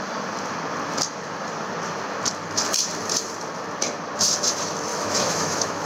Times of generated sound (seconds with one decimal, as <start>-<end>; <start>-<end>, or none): 4.9-5.9